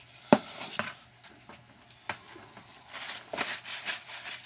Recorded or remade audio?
recorded